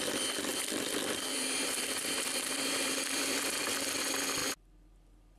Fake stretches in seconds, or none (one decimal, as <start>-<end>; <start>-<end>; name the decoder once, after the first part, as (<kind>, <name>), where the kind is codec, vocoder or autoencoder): 0.5-3.7 (vocoder, BigVGAN v2)